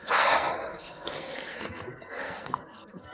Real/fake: fake